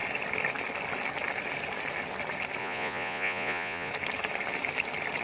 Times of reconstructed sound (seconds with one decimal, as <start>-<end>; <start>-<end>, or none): 2.6-3.9